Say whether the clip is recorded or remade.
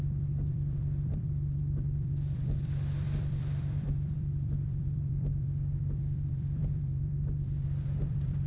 remade